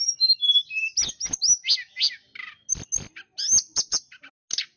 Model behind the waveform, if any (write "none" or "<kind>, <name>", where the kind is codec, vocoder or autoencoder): none